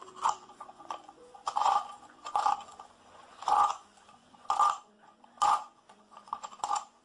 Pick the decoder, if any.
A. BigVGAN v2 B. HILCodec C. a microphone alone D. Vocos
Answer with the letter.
D